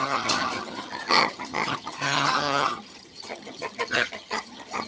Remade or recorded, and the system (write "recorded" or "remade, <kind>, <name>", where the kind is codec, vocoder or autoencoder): remade, vocoder, HiFi-GAN